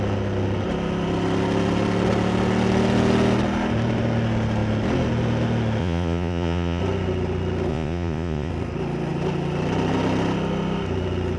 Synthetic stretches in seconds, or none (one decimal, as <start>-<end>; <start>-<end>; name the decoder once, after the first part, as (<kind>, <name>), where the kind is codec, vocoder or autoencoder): 5.8-6.8 (vocoder, Vocos); 7.7-8.5